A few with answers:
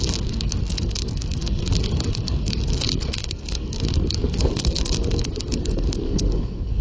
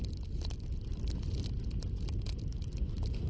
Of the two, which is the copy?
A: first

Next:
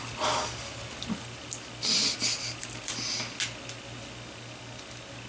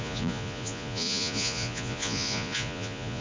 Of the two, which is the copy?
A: second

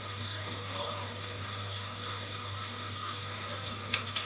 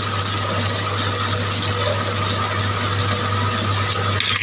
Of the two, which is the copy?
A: first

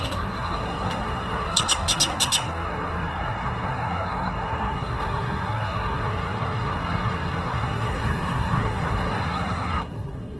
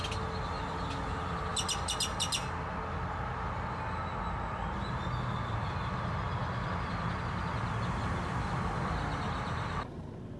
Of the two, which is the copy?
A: first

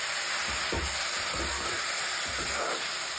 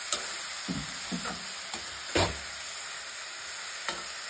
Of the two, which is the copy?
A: first